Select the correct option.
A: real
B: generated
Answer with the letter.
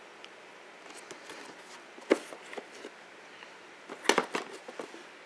A